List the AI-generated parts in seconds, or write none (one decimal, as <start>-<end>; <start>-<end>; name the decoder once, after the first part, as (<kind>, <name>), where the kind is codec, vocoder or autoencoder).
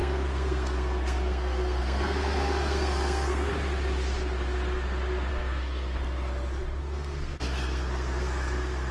0.0-3.5 (codec, SNAC); 5.3-6.0; 6.8-8.9